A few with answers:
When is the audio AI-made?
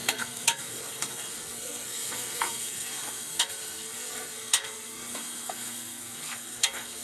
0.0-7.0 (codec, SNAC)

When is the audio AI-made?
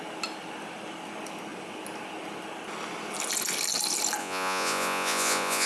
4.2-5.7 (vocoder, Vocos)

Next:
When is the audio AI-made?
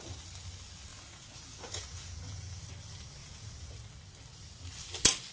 0.9-2.6 (vocoder, Vocos); 3.2-3.7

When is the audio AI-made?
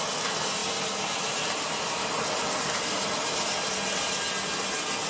none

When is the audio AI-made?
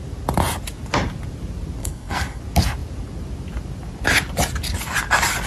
1.8-2.4 (codec, SNAC)